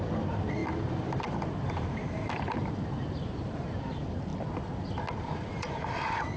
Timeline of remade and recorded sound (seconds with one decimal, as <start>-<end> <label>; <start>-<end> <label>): 0.0-4.3 remade; 4.3-5.2 recorded; 5.2-6.4 remade